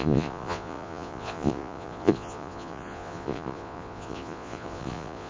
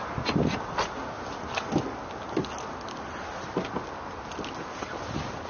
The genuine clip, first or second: second